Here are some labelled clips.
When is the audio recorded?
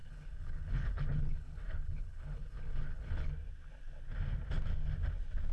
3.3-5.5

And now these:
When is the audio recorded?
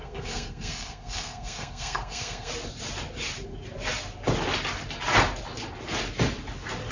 2.5-6.9